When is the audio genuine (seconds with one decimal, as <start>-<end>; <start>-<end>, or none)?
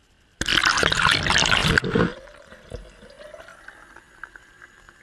0.0-5.0